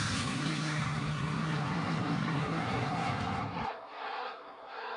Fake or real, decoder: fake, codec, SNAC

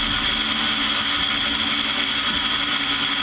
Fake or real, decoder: real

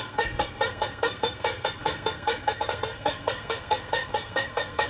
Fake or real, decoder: fake, codec, SNAC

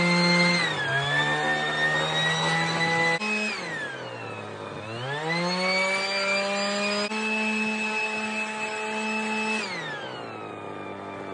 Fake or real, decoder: real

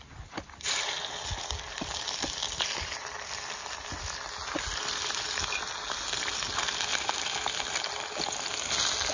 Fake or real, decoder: real